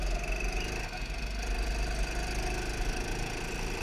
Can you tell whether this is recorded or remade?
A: recorded